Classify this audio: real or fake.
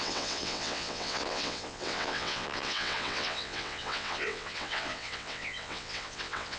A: fake